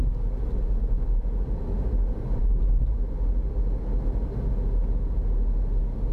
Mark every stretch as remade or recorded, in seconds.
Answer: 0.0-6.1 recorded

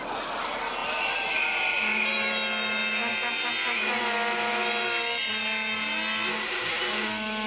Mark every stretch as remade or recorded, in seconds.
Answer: 0.0-7.5 recorded

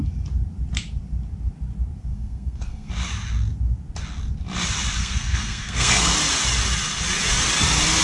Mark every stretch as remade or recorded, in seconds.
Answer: 0.0-2.1 recorded; 2.1-2.9 remade; 2.9-5.0 recorded; 5.0-6.1 remade; 6.1-8.0 recorded

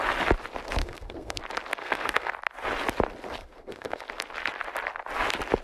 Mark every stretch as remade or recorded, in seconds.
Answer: 0.0-0.8 recorded; 0.8-1.4 remade; 1.4-1.8 recorded; 1.8-2.3 remade; 2.3-3.4 recorded; 3.4-4.0 remade; 4.0-5.6 recorded

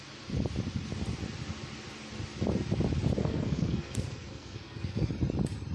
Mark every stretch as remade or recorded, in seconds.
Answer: 0.0-3.2 recorded; 3.2-5.1 remade; 5.1-5.7 recorded